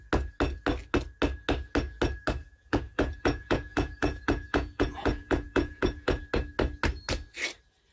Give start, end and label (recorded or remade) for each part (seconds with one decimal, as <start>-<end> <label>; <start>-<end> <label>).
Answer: 0.0-2.4 recorded; 2.4-6.2 remade; 6.2-7.9 recorded